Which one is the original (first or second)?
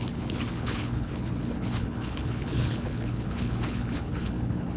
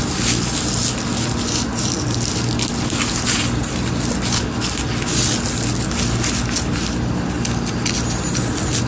second